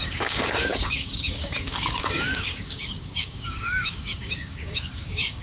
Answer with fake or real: fake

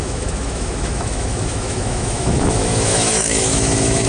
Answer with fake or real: fake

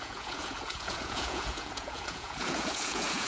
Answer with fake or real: fake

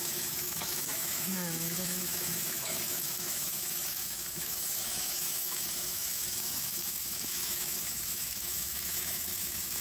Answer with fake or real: fake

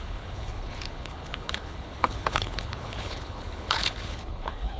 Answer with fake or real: fake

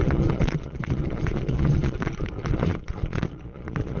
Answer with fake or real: fake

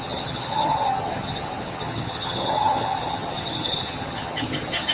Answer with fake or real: fake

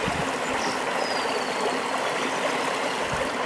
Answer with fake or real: real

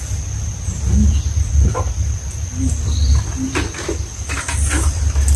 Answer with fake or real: real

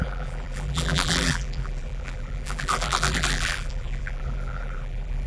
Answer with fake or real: fake